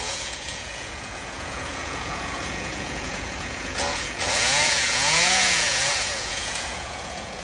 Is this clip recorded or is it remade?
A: remade